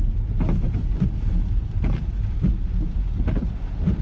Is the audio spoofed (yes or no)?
no